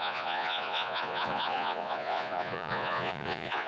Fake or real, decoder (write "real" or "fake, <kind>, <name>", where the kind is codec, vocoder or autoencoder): fake, vocoder, Vocos